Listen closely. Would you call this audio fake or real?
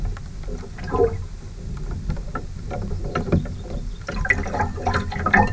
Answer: real